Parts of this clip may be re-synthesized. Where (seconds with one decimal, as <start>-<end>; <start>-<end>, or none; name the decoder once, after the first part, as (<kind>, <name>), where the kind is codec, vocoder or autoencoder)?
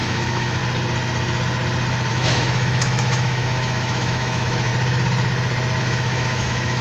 0.0-0.6 (autoencoder, DAC-VAE); 2.1-4.7; 5.8-6.8